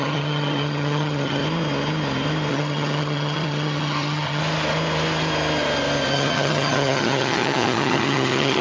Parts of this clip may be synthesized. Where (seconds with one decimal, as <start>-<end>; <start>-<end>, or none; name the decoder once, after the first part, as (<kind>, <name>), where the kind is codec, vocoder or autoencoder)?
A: 0.0-1.4 (vocoder, HiFi-GAN); 2.5-4.4; 6.1-8.6